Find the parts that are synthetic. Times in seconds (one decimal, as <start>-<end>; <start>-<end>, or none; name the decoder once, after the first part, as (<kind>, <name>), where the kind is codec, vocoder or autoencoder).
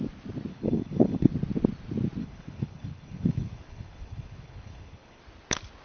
0.5-1.3 (codec, HILCodec); 2.2-5.2